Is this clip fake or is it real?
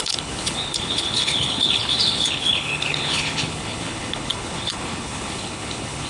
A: fake